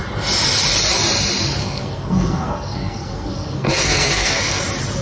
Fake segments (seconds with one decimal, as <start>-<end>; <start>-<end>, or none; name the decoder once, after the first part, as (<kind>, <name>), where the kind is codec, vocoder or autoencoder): 1.6-4.6 (codec, SNAC)